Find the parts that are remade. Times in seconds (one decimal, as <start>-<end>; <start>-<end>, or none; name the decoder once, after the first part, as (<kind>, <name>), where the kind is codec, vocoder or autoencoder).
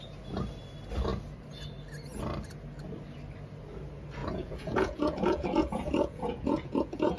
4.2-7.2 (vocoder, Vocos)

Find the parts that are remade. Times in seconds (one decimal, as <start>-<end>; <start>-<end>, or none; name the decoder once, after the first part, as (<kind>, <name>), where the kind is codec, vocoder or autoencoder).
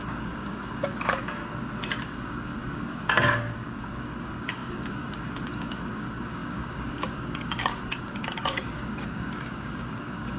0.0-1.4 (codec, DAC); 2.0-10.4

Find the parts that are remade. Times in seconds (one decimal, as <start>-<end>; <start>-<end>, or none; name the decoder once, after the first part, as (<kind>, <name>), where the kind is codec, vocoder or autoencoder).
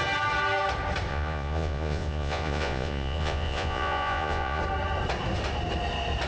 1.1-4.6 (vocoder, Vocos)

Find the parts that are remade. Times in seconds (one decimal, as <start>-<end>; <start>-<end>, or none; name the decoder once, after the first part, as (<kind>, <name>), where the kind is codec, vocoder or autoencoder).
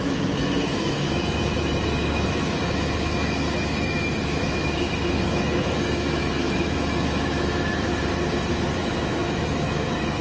0.0-7.9 (autoencoder, DAC-VAE); 8.5-10.2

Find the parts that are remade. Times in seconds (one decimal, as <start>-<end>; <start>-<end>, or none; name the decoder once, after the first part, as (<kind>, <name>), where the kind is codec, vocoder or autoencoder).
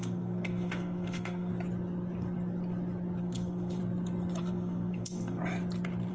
0.0-1.5 (codec, SNAC); 3.2-3.8; 4.4-5.4